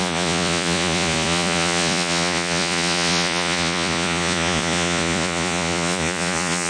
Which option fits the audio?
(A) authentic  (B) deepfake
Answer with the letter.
B